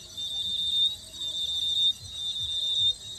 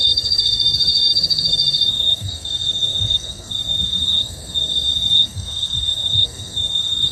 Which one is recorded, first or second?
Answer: first